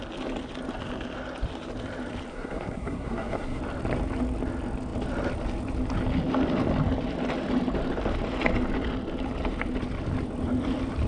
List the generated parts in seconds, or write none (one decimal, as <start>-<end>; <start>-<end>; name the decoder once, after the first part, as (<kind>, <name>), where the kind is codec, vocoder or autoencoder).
2.3-3.6 (codec, SNAC)